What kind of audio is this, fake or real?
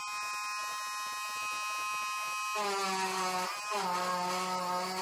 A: real